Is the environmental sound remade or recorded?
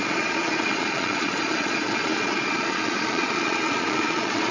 remade